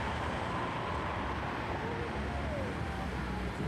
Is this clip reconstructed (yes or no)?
no